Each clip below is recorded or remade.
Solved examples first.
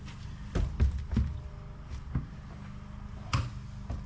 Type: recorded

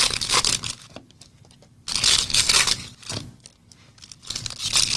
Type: recorded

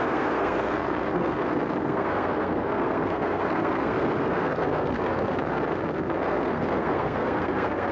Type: remade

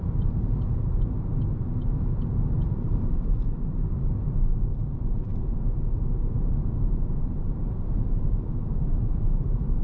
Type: remade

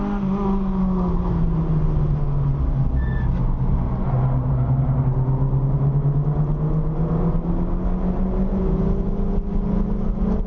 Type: recorded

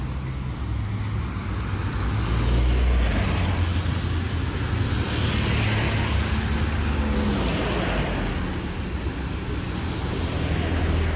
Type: recorded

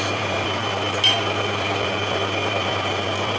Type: remade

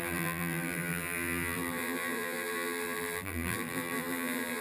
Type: remade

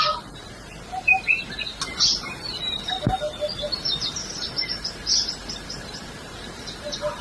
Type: recorded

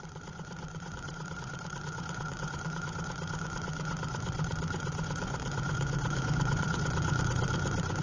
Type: remade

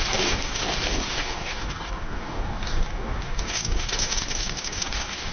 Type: remade